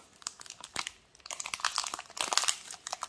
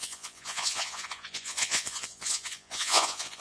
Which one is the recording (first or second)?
first